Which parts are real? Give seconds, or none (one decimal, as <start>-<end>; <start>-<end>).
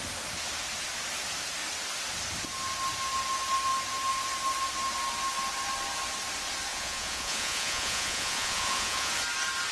0.0-6.7; 9.1-9.7